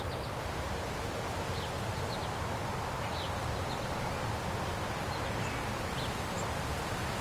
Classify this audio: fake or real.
real